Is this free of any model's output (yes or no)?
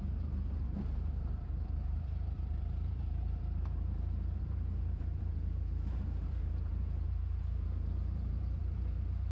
no